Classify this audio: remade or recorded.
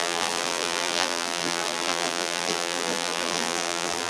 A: remade